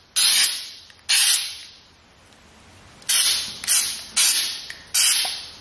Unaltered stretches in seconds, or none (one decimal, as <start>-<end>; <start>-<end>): 0.0-5.6